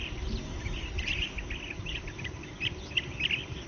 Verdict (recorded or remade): recorded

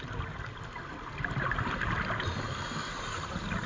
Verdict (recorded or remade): recorded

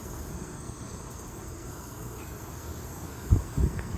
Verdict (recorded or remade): remade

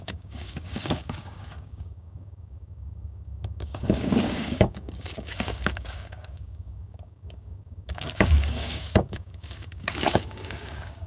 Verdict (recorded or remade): remade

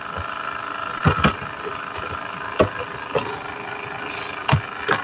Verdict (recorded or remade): recorded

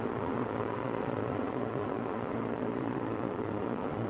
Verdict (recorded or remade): remade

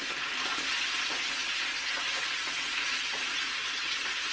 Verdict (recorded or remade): remade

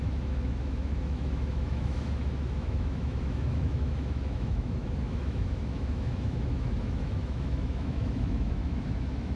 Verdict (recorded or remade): remade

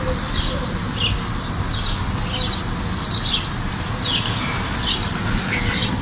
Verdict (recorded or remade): recorded